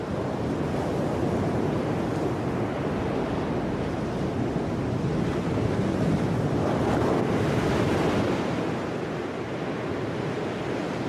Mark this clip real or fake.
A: real